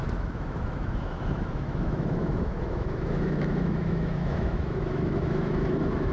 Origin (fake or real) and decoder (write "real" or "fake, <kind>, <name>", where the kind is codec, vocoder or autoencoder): fake, autoencoder, DAC-VAE